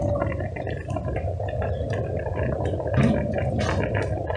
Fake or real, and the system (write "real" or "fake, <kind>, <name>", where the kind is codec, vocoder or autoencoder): real